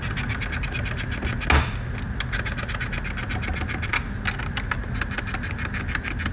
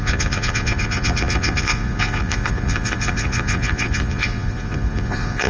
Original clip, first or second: first